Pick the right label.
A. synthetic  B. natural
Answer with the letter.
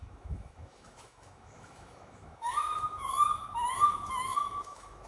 A